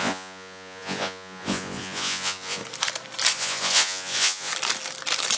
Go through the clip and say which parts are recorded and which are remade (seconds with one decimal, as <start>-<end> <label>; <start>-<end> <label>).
0.0-2.6 remade; 2.6-3.3 recorded; 3.3-4.5 remade; 4.5-5.4 recorded